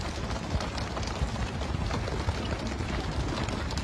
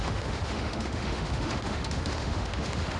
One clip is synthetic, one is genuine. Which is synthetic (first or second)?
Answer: second